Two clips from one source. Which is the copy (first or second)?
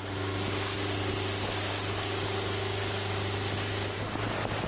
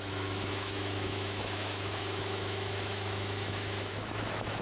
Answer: second